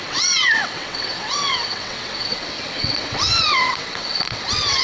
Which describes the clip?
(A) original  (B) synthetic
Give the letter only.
B